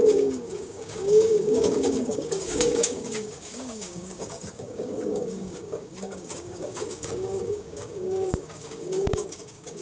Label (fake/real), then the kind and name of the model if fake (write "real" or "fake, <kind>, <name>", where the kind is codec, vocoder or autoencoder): fake, codec, DAC